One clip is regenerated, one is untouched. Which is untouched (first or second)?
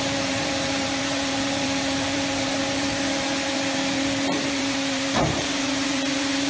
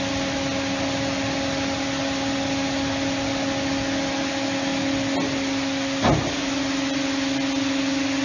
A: second